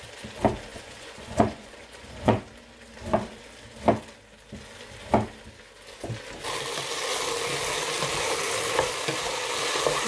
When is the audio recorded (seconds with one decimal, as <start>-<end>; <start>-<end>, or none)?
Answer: 0.0-0.7; 2.4-10.1